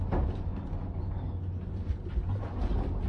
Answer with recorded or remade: recorded